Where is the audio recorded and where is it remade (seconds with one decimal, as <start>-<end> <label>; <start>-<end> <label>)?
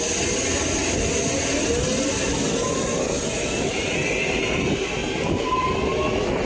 0.0-6.5 recorded